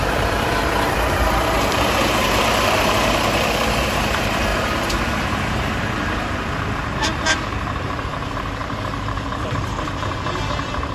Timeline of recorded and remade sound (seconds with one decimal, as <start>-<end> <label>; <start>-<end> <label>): 0.0-10.9 remade